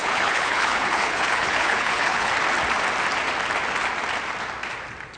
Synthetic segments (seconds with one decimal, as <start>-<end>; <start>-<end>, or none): 0.0-2.3